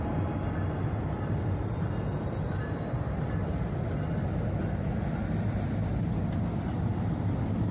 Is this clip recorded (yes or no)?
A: yes